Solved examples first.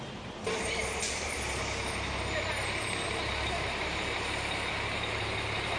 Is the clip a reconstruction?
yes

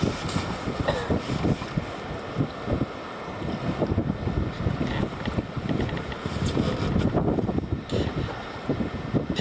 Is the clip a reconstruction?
no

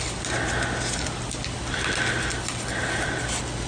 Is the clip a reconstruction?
no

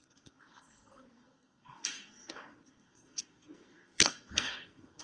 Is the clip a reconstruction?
yes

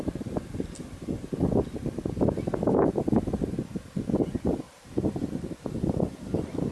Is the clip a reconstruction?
no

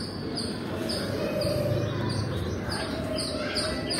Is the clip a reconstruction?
no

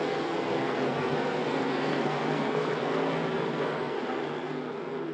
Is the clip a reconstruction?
yes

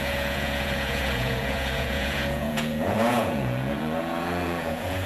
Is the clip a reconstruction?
yes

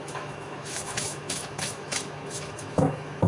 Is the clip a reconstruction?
yes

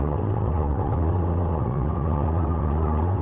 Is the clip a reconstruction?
yes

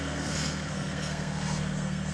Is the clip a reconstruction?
yes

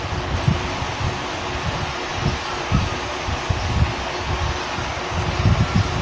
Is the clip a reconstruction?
no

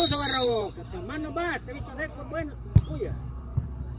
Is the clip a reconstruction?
yes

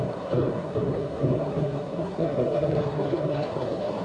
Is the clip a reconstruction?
yes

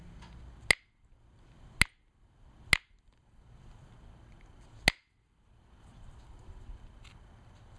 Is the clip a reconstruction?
no